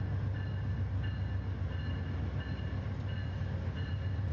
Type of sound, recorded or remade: recorded